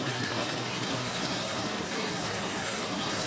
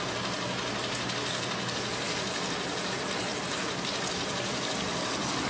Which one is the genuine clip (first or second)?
second